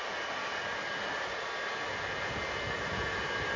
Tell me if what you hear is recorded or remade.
recorded